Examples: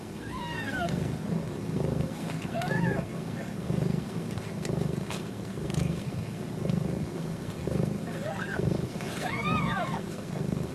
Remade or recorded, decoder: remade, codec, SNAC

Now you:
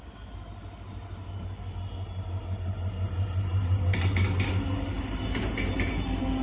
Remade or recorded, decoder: recorded